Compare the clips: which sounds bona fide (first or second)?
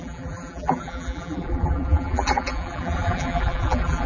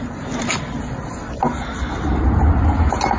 second